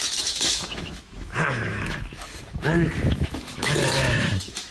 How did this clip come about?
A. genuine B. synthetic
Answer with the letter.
B